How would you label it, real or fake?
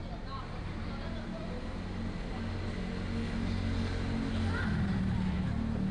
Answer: real